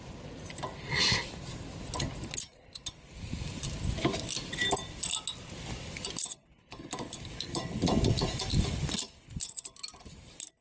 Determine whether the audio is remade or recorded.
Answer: recorded